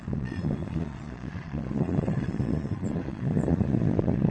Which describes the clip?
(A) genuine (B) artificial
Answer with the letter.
B